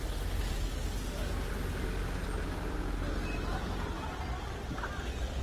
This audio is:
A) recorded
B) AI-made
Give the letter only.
A